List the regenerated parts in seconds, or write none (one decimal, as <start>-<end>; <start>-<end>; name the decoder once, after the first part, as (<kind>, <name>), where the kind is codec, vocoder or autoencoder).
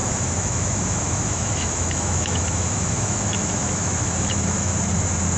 0.0-4.7 (autoencoder, DAC-VAE)